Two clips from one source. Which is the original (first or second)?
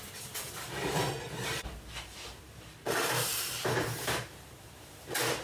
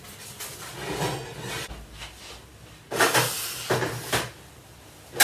second